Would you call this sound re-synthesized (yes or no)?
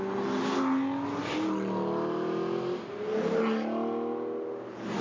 no